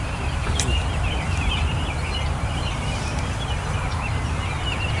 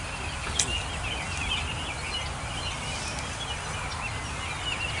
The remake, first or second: first